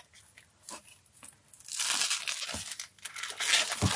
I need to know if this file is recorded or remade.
recorded